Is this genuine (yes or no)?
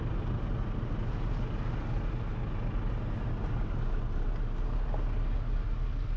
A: yes